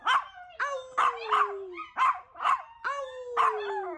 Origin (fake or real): real